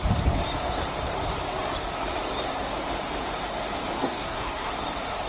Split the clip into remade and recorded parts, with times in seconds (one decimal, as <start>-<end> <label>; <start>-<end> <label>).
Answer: 0.0-4.0 recorded; 4.0-4.7 remade; 4.7-5.3 recorded